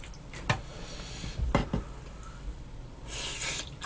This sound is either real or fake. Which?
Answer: fake